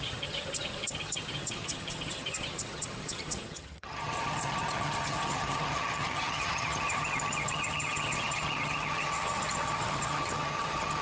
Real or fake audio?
fake